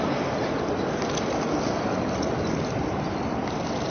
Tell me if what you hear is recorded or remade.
recorded